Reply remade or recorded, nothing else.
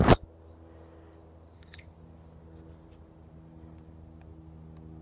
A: recorded